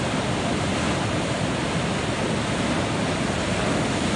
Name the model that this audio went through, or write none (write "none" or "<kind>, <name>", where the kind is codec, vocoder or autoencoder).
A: none